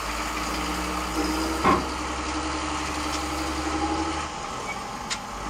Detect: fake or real real